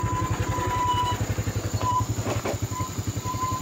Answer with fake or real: real